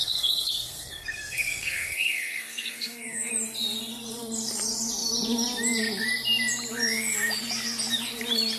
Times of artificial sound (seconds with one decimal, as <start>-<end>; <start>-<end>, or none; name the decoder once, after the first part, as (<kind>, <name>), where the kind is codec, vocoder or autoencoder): 0.0-3.3 (codec, SNAC)